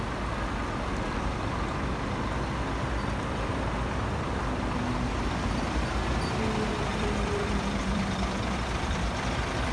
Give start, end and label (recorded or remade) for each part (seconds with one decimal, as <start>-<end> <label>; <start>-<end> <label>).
0.0-6.9 recorded; 6.9-9.7 remade

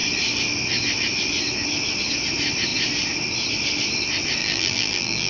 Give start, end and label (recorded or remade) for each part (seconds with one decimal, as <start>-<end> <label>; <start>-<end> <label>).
0.0-4.4 recorded; 4.4-5.3 remade